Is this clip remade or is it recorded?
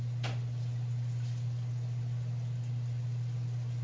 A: recorded